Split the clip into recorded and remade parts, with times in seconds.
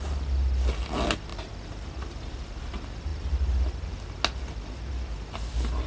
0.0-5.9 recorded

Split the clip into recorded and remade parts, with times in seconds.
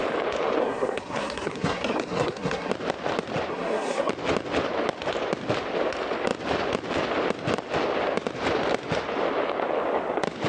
0.0-0.6 recorded; 0.6-2.7 remade; 2.7-3.5 recorded; 3.5-4.1 remade; 4.1-10.5 recorded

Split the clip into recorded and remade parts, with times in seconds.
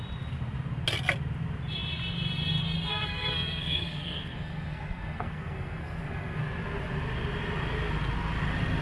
0.0-2.9 recorded; 2.9-6.4 remade; 6.4-8.8 recorded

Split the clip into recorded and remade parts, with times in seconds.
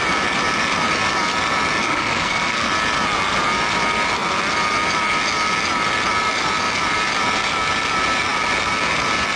0.0-1.8 recorded; 1.8-2.7 remade; 2.7-9.4 recorded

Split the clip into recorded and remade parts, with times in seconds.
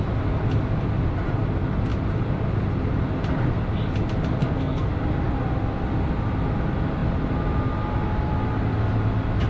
0.0-4.4 recorded; 4.4-4.9 remade; 4.9-9.5 recorded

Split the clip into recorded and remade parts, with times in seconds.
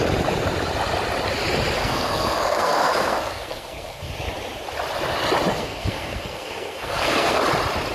0.0-1.8 recorded; 1.8-4.1 remade; 4.1-5.5 recorded; 5.5-7.4 remade; 7.4-7.9 recorded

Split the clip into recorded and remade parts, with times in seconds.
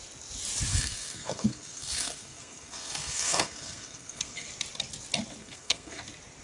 0.0-0.7 recorded; 0.7-4.5 remade; 4.5-5.4 recorded; 5.4-6.0 remade; 6.0-6.4 recorded